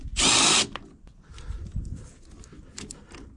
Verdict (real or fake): real